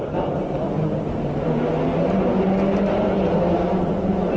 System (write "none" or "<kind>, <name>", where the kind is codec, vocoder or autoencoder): none